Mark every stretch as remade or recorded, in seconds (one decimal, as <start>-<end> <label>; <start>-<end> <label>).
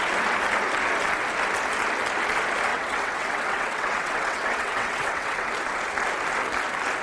0.0-2.7 recorded; 2.7-5.5 remade; 5.5-7.0 recorded